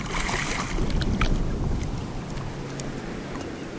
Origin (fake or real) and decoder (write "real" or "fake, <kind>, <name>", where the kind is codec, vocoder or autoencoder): real